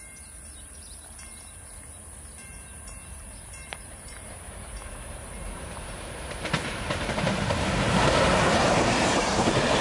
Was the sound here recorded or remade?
remade